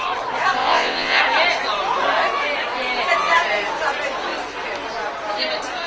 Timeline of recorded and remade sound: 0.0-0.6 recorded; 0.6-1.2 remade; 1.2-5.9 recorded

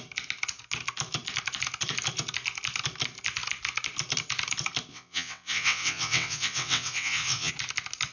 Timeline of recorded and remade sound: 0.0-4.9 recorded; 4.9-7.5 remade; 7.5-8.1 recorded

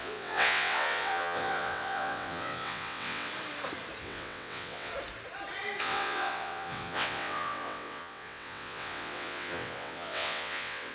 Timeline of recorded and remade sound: 0.0-3.3 remade; 3.3-4.0 recorded; 4.0-4.9 remade; 4.9-5.8 recorded; 5.8-10.9 remade

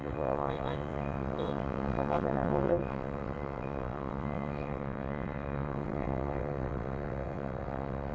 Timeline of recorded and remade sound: 0.0-8.1 remade

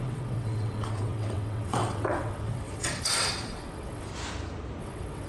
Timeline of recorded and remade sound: 0.0-4.1 remade; 4.1-4.8 recorded; 4.8-5.3 remade

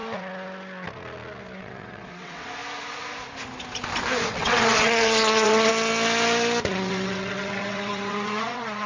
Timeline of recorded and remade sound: 0.0-1.6 recorded; 1.6-2.6 remade; 2.6-4.3 recorded; 4.3-5.7 remade; 5.7-6.7 recorded; 6.7-8.9 remade

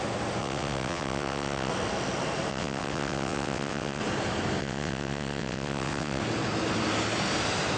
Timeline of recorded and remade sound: 0.0-0.4 recorded; 0.4-1.7 remade; 1.7-2.5 recorded; 2.5-4.0 remade; 4.0-4.6 recorded; 4.6-6.2 remade; 6.2-7.8 recorded